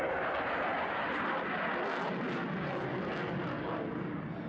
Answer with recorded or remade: recorded